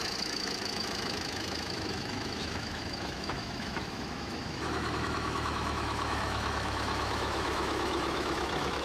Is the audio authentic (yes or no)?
no